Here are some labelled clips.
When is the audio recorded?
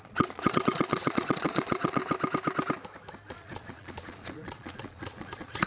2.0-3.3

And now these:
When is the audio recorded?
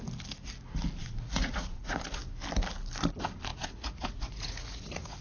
0.0-1.0; 2.2-3.5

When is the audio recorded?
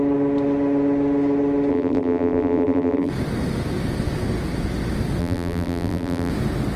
0.0-1.7; 3.1-5.2; 6.3-6.8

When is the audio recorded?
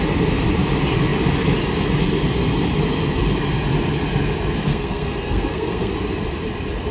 0.0-4.7; 5.9-6.9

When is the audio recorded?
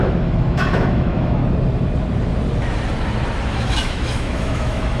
1.4-3.5